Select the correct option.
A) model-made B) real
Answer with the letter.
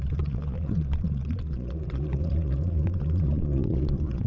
A